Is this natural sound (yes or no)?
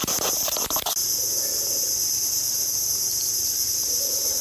yes